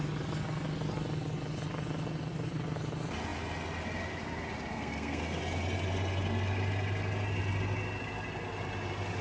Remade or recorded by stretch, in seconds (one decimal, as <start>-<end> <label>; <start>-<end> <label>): 0.0-4.7 recorded; 4.7-5.4 remade; 5.4-9.2 recorded